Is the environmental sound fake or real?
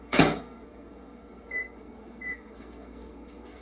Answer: fake